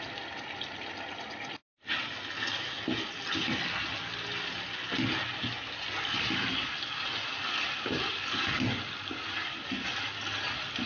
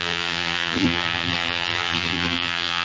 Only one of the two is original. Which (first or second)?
first